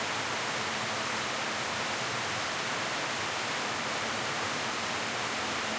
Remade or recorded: remade